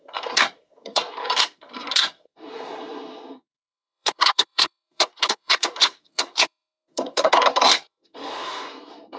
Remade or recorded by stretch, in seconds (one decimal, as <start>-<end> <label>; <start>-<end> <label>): 0.0-9.2 remade